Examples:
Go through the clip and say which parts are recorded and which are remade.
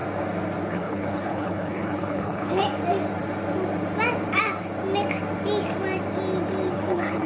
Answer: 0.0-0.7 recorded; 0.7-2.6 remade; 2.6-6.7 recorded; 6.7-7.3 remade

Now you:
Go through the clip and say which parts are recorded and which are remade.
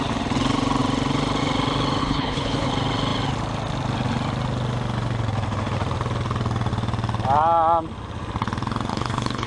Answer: 0.0-2.0 recorded; 2.0-2.7 remade; 2.7-8.9 recorded; 8.9-9.5 remade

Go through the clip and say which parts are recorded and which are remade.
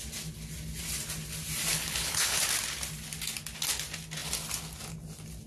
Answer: 0.0-1.7 recorded; 1.7-2.4 remade; 2.4-5.5 recorded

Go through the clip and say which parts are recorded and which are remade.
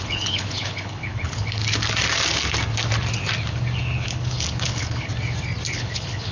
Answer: 0.0-1.6 remade; 1.6-3.8 recorded; 3.8-5.1 remade; 5.1-5.7 recorded; 5.7-6.3 remade